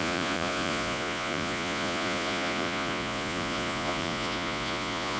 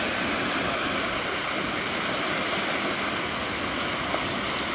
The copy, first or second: first